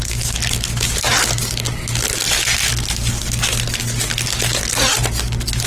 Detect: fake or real real